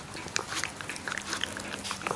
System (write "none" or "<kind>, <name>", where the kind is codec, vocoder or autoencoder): none